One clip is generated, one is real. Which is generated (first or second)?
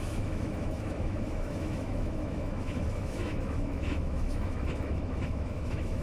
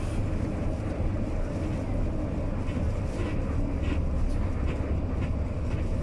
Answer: first